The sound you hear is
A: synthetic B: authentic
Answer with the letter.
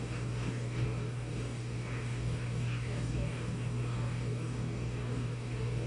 A